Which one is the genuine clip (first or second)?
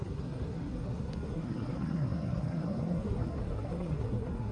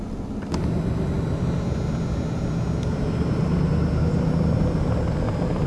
second